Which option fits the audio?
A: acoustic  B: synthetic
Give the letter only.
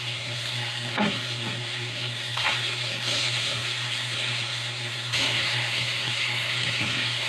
B